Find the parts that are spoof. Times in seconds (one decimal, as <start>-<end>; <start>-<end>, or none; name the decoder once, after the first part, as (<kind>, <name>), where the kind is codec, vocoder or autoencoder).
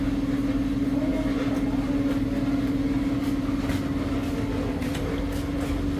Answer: none